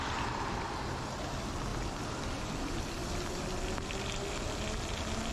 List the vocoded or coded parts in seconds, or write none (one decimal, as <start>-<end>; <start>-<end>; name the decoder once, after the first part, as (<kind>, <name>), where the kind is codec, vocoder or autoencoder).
none